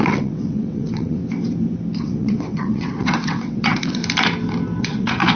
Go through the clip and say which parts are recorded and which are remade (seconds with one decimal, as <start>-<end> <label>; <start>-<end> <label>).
0.0-1.2 remade; 1.2-2.0 recorded; 2.0-4.0 remade; 4.0-4.8 recorded; 4.8-5.4 remade